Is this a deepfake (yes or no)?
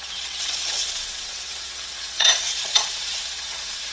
yes